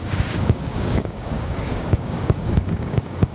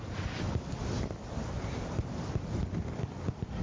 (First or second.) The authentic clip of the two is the second